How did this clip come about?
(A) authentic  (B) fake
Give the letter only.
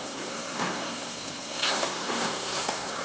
B